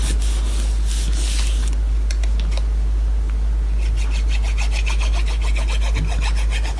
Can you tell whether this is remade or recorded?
recorded